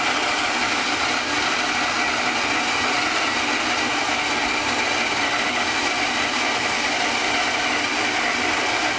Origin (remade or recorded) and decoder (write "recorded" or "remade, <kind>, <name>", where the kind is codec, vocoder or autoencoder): recorded